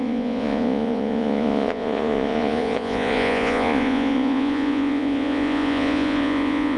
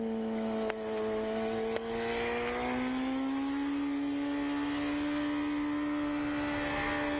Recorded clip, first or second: second